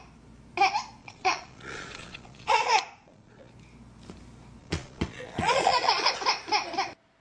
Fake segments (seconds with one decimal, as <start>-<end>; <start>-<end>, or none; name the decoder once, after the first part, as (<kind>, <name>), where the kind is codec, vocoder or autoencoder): 1.0-3.5 (vocoder, Vocos); 4.6-6.1